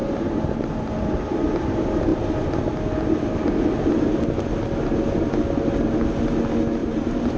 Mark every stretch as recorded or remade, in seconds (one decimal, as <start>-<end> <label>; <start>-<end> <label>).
0.0-1.1 remade; 1.1-6.8 recorded; 6.8-7.4 remade